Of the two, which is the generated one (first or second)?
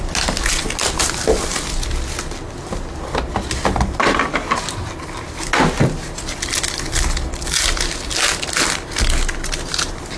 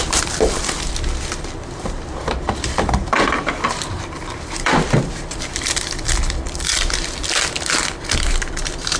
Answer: second